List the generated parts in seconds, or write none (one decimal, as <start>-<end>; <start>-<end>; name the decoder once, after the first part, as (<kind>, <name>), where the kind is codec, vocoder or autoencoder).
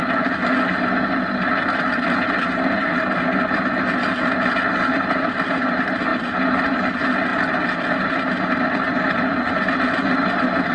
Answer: none